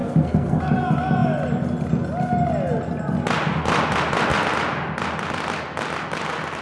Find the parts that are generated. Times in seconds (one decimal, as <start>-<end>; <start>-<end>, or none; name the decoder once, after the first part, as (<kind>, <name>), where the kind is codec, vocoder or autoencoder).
0.0-0.6 (codec, SNAC)